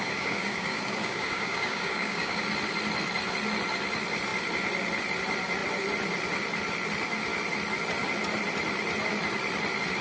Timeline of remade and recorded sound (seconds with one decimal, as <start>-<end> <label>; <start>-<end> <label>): 0.0-2.4 remade; 2.4-10.0 recorded